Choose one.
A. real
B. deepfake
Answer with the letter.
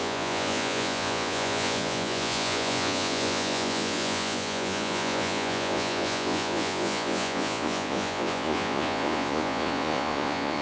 B